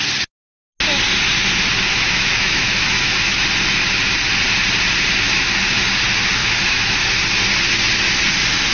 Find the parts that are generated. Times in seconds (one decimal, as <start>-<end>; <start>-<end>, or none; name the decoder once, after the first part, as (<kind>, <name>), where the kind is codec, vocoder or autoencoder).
1.8-3.4 (autoencoder, DAC-VAE); 6.4-7.2